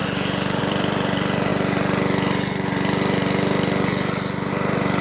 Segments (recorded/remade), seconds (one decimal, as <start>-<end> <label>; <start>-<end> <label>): 0.0-0.6 recorded; 0.6-1.5 remade; 1.5-4.5 recorded; 4.5-5.0 remade